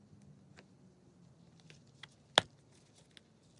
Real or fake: real